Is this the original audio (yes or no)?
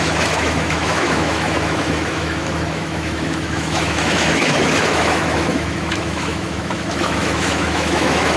no